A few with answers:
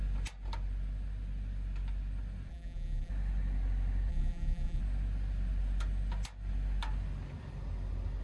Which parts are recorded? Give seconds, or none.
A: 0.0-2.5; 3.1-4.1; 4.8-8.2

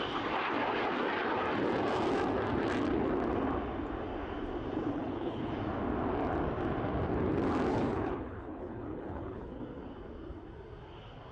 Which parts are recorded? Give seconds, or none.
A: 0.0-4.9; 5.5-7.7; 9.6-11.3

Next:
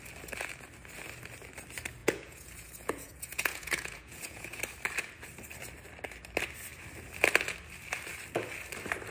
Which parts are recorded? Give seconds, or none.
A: 0.0-2.0; 4.6-9.1

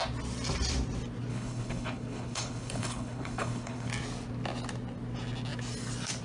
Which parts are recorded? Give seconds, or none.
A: 0.0-1.3; 3.9-6.2

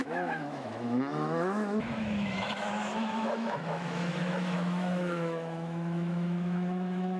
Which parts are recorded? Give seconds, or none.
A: none

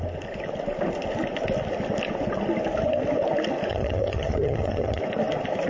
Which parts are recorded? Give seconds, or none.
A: 0.0-3.7; 5.0-5.7

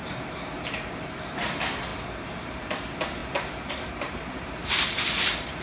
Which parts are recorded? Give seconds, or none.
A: none

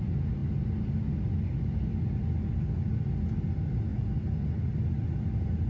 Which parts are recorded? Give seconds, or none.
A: 0.0-5.7